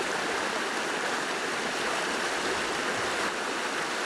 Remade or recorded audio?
recorded